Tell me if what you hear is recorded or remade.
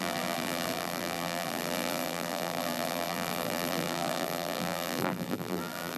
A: remade